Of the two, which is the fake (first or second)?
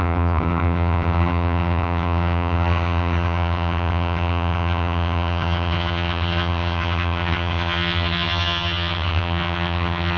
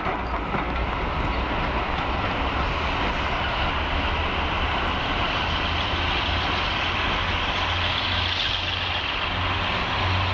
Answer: first